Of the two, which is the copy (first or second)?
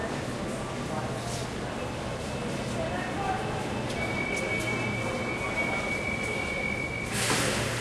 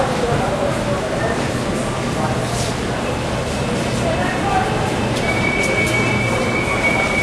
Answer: second